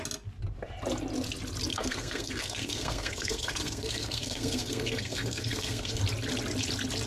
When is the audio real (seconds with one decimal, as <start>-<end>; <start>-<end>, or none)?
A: 0.0-1.7; 6.0-7.1